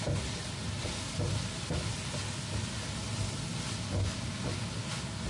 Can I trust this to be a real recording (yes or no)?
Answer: yes